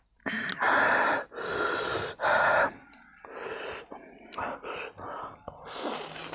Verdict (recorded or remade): recorded